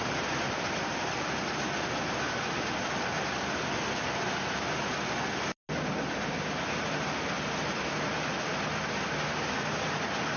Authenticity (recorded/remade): recorded